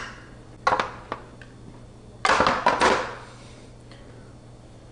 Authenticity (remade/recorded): recorded